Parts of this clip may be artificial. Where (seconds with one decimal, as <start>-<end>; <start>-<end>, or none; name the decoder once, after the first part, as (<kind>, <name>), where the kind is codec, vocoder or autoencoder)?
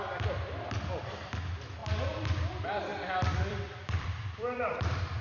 2.9-5.2 (vocoder, BigVGAN v2)